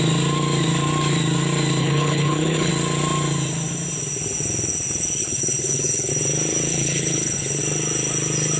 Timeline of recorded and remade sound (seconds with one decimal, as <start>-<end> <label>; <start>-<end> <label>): 0.0-1.8 recorded; 1.8-2.7 remade; 2.7-5.2 recorded; 5.2-6.1 remade; 6.1-6.7 recorded; 6.7-7.6 remade; 7.6-8.6 recorded